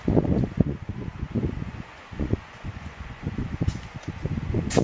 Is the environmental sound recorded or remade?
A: remade